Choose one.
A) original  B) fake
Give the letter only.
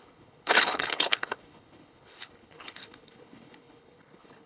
B